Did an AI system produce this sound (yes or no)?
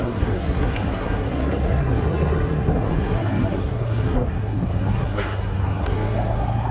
yes